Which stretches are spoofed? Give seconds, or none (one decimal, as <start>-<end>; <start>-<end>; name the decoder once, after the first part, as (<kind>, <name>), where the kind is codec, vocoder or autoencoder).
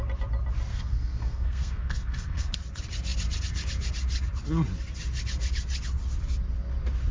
0.7-2.5 (codec, SNAC)